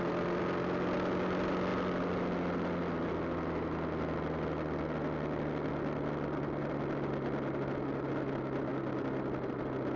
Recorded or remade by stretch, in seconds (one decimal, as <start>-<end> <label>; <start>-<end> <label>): 0.0-10.0 recorded